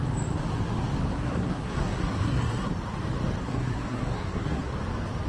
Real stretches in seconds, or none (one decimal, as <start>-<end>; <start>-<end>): 0.0-1.1; 2.7-3.4; 4.7-5.3